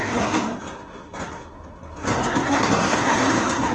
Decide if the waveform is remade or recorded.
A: remade